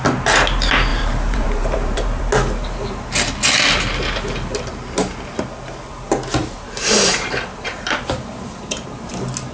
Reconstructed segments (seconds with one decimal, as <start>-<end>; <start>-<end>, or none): 0.9-2.2; 6.4-9.1